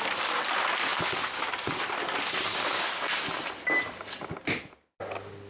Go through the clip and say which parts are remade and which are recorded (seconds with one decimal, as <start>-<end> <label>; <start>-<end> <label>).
0.0-5.5 recorded